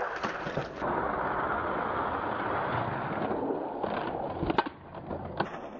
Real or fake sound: real